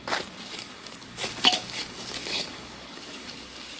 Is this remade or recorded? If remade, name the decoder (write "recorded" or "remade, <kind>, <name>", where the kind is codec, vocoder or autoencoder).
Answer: remade, codec, DAC